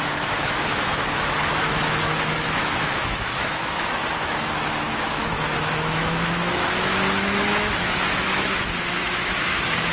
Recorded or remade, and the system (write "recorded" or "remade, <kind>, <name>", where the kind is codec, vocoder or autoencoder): remade, autoencoder, DAC-VAE